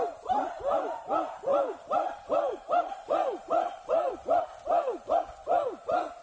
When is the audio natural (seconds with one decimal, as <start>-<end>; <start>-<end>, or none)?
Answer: 0.0-0.4; 1.1-1.5; 4.1-6.2